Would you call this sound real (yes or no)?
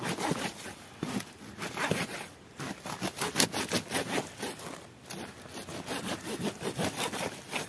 yes